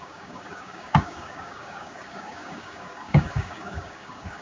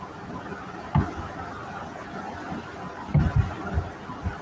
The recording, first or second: second